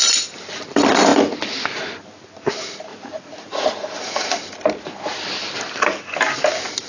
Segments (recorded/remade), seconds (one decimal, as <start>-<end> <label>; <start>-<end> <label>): 0.0-2.9 recorded; 2.9-4.4 remade; 4.4-6.9 recorded